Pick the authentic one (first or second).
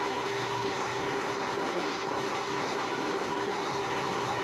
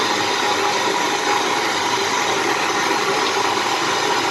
second